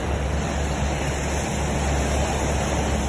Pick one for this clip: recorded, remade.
recorded